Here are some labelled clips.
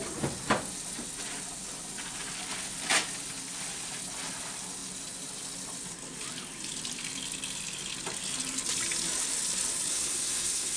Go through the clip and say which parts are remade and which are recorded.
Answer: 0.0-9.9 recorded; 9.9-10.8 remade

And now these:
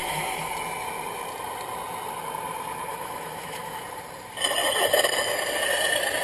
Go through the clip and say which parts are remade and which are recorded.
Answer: 0.0-0.5 remade; 0.5-2.9 recorded; 2.9-3.8 remade; 3.8-6.2 recorded

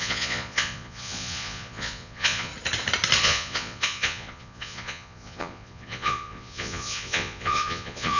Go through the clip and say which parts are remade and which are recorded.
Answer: 0.0-2.5 remade; 2.5-3.2 recorded; 3.2-8.2 remade